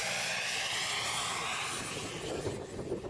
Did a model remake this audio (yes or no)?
no